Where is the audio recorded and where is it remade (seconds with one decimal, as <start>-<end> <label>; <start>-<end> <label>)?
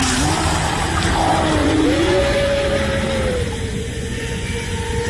0.0-1.6 recorded; 1.6-2.7 remade; 2.7-3.7 recorded; 3.7-5.1 remade